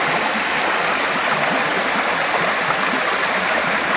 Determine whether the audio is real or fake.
real